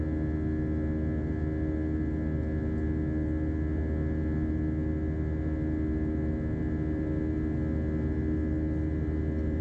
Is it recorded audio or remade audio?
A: recorded